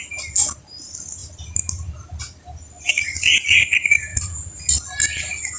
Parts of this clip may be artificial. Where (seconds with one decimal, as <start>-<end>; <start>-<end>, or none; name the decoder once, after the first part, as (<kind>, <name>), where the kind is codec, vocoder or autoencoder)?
4.1-4.6 (vocoder, Vocos)